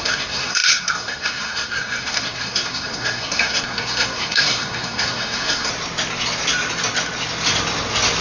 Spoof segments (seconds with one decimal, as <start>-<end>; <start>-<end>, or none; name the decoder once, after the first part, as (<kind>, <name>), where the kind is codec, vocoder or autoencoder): 0.0-5.7 (codec, SNAC)